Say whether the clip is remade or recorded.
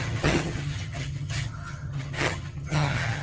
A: remade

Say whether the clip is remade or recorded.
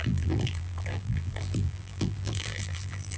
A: remade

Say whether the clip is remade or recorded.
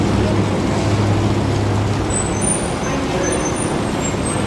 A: recorded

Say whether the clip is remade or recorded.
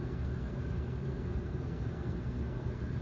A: remade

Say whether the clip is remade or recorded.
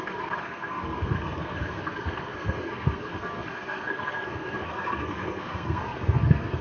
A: remade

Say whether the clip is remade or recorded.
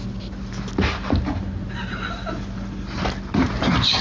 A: recorded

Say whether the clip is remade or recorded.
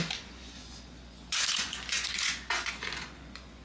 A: remade